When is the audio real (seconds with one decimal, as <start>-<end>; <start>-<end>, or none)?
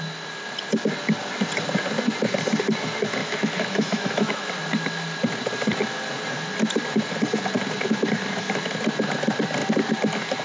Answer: 0.0-3.2; 4.5-10.4